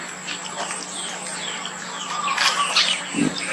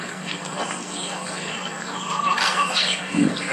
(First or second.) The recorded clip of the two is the first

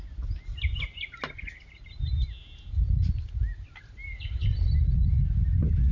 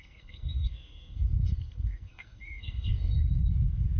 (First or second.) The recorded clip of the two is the first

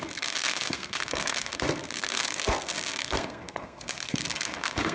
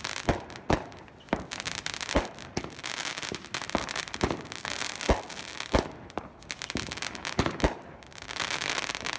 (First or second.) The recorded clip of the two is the second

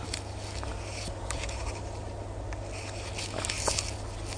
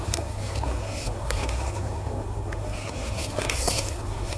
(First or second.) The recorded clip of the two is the first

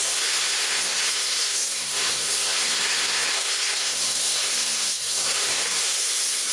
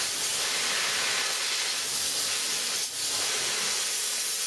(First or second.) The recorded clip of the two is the second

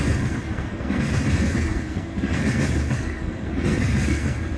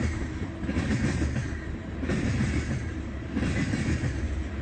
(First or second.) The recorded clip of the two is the second